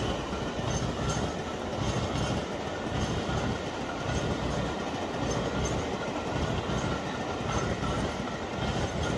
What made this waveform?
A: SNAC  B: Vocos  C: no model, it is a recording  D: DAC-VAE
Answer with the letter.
C